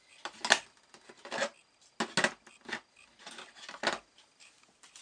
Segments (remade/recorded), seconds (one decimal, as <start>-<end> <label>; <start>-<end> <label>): 0.0-5.0 recorded